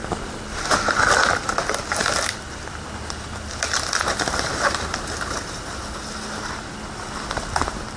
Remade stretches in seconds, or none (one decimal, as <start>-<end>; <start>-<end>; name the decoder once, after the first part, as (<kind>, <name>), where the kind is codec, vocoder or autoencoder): none